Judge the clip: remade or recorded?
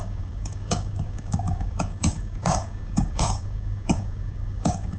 remade